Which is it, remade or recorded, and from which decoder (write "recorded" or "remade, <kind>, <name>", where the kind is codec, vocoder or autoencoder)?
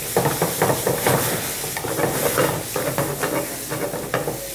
recorded